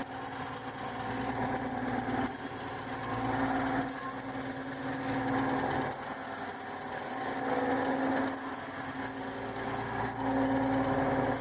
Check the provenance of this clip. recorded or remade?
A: recorded